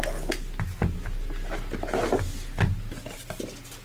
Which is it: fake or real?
real